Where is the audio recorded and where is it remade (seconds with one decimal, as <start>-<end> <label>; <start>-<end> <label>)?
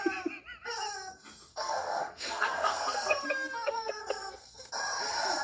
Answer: 0.0-1.5 recorded; 1.5-4.7 remade; 4.7-5.4 recorded